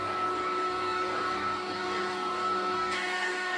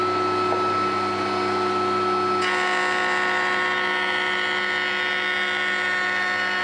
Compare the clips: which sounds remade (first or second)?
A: first